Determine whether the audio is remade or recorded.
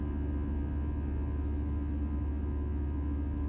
recorded